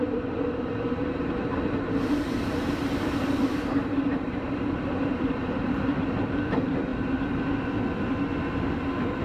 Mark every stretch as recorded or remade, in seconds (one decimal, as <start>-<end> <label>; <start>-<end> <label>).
0.0-6.9 remade; 6.9-9.2 recorded